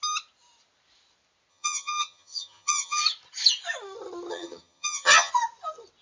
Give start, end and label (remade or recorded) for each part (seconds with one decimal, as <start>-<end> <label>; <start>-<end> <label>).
0.0-1.5 recorded; 1.5-3.0 remade; 3.0-4.3 recorded; 4.3-5.3 remade; 5.3-6.0 recorded